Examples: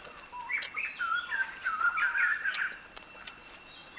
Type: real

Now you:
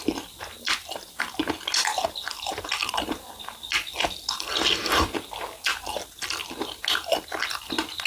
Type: real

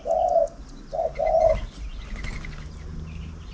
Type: real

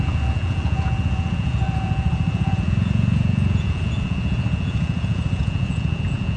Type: fake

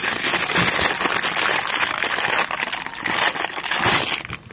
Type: real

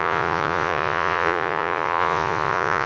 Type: fake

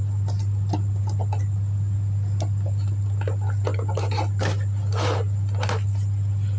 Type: real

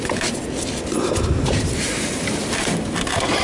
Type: real